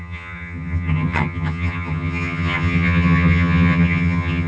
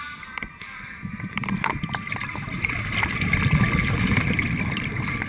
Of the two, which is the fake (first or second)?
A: first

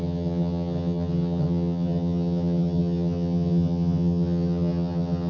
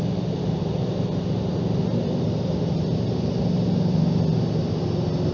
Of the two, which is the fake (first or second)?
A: first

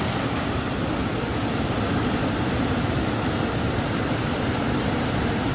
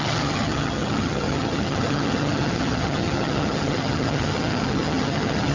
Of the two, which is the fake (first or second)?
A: second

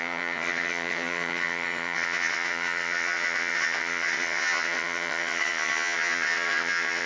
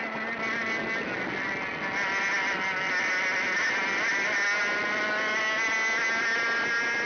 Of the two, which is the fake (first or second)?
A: first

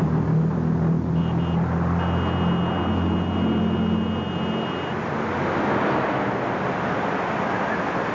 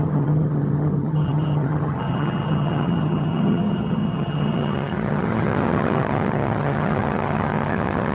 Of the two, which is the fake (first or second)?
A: second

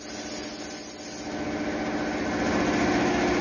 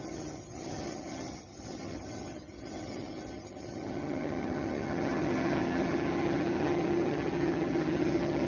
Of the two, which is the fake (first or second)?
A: second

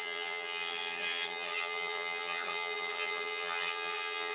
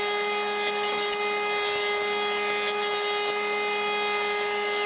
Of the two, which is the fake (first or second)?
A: first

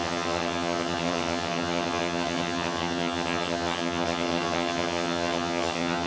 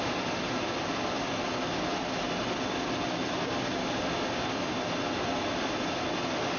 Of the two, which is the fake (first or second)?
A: first